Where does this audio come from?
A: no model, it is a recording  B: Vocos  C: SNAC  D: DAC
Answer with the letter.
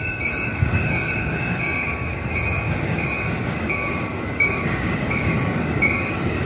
D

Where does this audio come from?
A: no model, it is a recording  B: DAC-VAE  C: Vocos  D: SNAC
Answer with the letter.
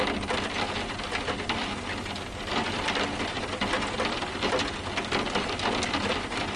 A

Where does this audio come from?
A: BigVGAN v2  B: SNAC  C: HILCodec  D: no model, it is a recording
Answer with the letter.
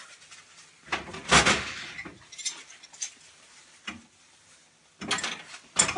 D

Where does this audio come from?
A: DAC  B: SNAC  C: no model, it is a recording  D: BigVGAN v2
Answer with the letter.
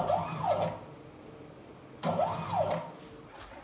C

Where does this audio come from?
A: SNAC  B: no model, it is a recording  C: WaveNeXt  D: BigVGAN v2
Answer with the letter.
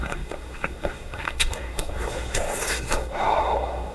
A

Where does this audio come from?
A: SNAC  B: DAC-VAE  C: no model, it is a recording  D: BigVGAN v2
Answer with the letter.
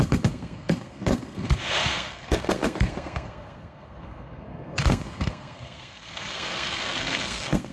A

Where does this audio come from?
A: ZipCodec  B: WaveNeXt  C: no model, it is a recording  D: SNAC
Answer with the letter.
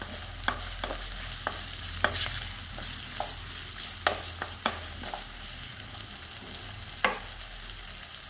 C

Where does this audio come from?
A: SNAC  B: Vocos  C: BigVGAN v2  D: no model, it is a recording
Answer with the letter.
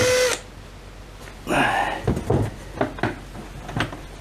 D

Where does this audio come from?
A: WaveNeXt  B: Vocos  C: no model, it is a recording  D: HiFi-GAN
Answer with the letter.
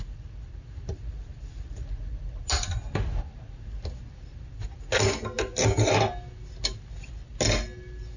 C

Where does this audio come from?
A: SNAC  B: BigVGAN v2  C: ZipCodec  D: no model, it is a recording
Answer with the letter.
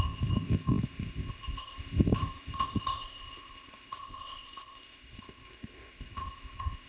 C